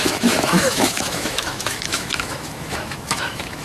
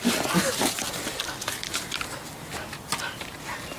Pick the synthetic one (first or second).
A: first